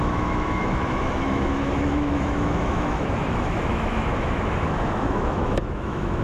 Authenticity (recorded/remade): remade